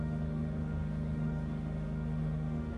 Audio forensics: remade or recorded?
remade